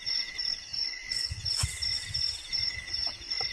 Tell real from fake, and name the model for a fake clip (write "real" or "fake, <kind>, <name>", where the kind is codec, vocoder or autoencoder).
real